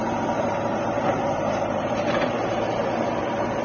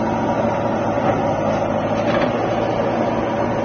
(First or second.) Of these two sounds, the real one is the second